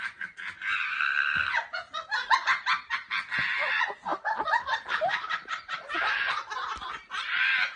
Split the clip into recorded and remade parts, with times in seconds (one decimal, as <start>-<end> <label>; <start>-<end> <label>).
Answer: 0.0-0.9 recorded; 0.9-1.5 remade; 1.5-7.8 recorded